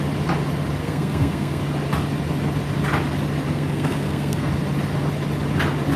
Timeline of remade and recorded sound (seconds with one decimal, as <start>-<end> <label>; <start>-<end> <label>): 0.0-0.8 recorded; 0.8-1.6 remade; 1.6-3.5 recorded; 3.5-4.5 remade; 4.5-6.0 recorded